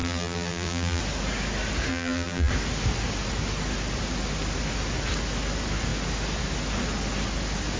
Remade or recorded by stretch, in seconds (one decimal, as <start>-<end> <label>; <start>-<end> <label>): 0.0-1.0 remade; 1.0-1.9 recorded; 1.9-2.5 remade; 2.5-7.8 recorded